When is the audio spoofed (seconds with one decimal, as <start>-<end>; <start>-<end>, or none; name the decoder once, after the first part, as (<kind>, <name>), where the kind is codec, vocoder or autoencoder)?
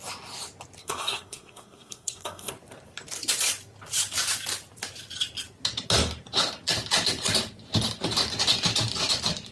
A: 0.8-2.5 (codec, SNAC)